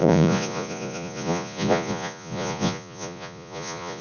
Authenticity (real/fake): fake